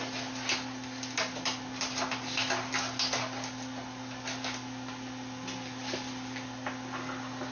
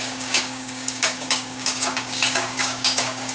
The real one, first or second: first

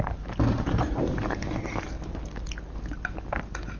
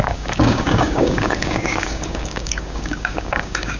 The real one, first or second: first